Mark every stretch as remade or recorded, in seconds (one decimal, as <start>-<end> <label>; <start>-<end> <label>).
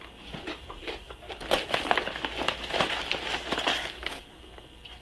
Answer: 0.0-0.8 recorded; 0.8-1.4 remade; 1.4-3.7 recorded; 3.7-4.3 remade; 4.3-5.0 recorded